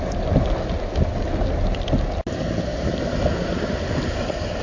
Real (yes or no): yes